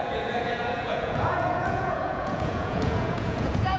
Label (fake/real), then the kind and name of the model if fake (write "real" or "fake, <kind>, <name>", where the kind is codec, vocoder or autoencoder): fake, vocoder, Vocos